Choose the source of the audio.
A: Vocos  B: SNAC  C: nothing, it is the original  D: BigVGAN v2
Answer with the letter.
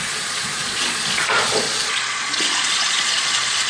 A